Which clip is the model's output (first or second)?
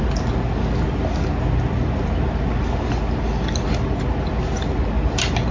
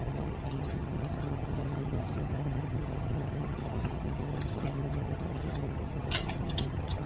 second